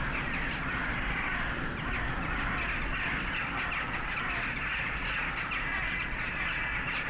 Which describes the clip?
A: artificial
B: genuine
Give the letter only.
B